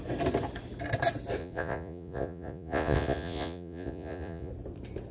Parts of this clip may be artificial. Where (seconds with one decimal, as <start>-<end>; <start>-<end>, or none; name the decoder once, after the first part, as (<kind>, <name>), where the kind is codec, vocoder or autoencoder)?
1.4-4.5 (vocoder, Vocos)

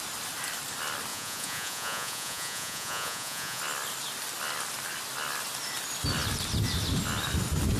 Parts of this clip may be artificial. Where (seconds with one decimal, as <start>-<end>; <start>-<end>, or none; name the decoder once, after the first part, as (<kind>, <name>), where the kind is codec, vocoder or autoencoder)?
1.1-3.6 (vocoder, Vocos)